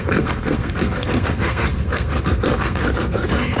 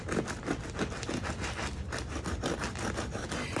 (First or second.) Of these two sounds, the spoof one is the first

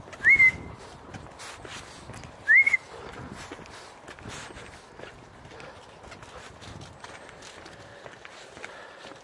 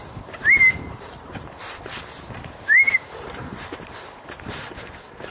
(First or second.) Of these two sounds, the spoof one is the second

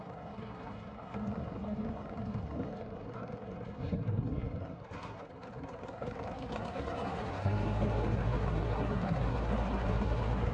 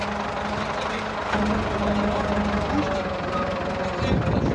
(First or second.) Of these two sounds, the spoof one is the first